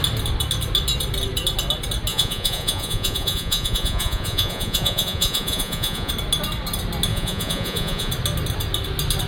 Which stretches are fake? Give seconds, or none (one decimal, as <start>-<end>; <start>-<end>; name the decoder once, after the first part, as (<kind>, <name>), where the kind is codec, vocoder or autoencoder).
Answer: 2.1-6.1 (vocoder, Vocos); 7.1-8.1